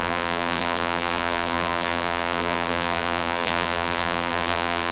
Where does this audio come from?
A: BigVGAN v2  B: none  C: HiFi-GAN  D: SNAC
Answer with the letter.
A